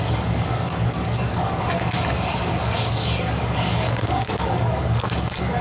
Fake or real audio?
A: fake